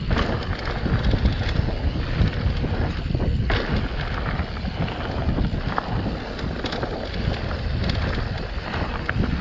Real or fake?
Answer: real